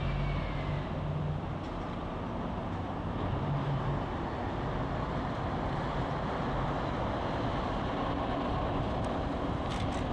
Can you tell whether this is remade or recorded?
recorded